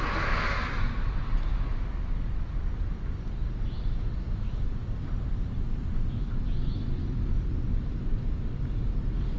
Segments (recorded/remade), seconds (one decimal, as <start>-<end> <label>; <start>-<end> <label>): 0.0-9.4 recorded